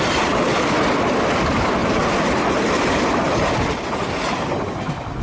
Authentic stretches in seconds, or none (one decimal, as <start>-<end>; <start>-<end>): 0.0-5.2